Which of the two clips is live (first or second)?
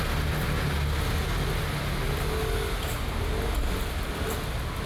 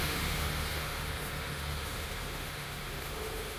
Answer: first